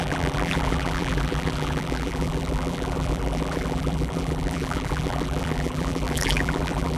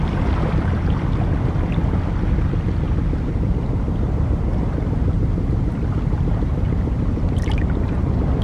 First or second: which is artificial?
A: first